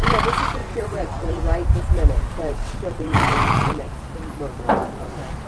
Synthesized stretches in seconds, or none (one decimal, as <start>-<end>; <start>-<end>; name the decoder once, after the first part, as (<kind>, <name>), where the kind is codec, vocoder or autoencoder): 0.6-1.4 (vocoder, WaveNeXt); 2.4-3.9